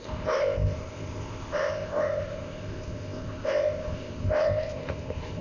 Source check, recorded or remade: remade